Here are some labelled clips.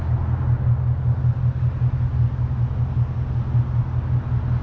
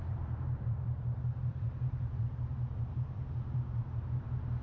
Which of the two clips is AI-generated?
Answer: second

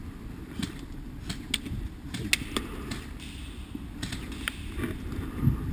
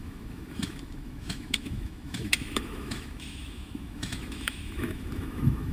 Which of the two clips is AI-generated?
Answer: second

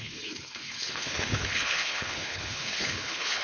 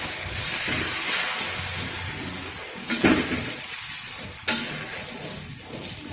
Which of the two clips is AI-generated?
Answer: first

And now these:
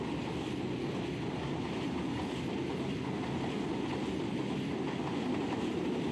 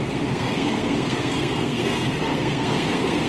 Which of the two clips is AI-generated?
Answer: second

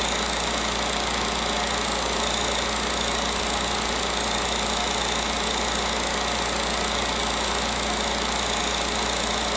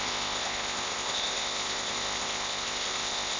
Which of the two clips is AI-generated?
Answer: second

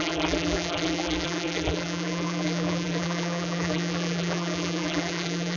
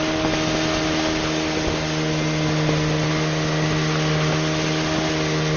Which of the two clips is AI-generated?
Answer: first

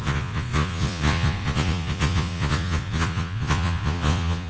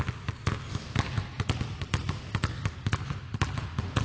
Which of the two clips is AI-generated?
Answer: first